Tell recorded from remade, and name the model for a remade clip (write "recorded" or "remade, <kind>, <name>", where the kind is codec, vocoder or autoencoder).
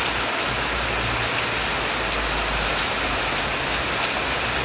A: recorded